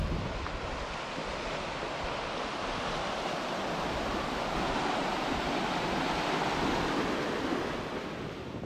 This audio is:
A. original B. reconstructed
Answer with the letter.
A